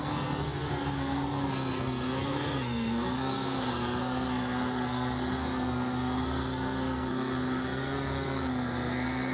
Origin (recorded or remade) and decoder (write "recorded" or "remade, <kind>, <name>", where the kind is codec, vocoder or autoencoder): remade, codec, SNAC